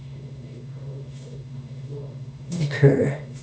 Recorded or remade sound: remade